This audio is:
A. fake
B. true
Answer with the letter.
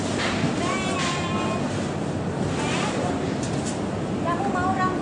B